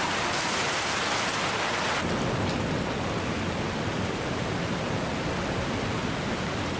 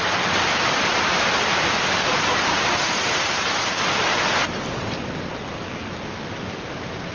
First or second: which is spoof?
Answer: second